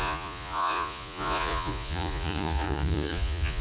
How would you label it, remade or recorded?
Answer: remade